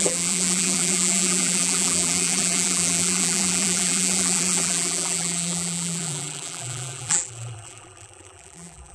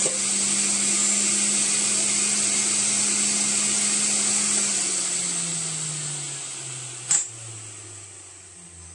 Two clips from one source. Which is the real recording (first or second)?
second